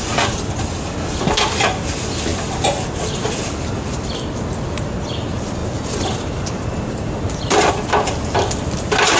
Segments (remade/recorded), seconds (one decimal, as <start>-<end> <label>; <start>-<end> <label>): 0.0-9.2 recorded